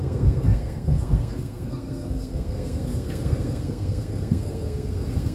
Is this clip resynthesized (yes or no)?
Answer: yes